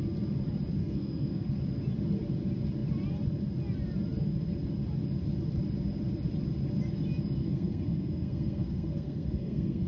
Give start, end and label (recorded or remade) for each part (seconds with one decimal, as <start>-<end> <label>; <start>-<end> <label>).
0.0-0.8 recorded; 0.8-1.6 remade; 1.6-7.4 recorded; 7.4-9.9 remade